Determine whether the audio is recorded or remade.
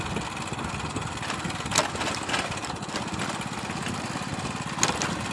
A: recorded